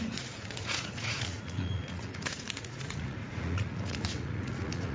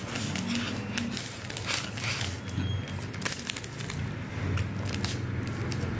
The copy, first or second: first